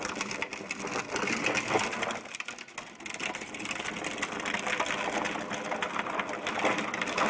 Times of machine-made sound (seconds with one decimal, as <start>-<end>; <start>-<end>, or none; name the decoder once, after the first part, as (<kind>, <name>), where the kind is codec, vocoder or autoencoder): none